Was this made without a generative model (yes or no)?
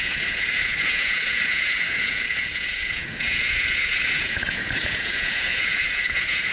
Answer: no